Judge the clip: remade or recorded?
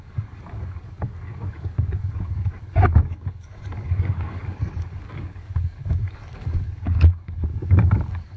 remade